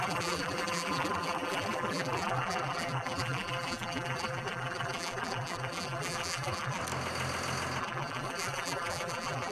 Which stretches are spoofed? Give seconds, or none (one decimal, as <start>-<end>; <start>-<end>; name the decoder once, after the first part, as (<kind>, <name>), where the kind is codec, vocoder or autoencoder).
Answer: 0.0-6.8 (vocoder, BigVGAN v2); 7.8-9.5